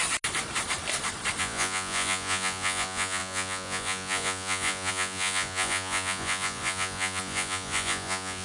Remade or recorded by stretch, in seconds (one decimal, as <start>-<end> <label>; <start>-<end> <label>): 0.0-1.4 recorded; 1.4-8.4 remade